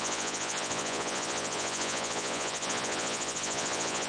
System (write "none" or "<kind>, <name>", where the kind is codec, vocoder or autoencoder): vocoder, Vocos